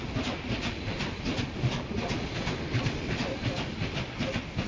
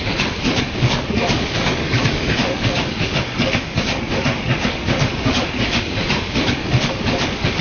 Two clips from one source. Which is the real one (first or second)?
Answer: first